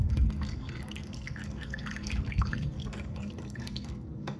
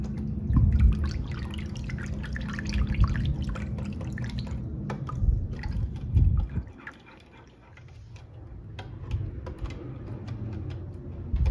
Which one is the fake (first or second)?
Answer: first